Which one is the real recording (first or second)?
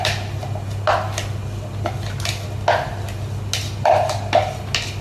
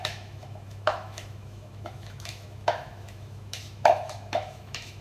first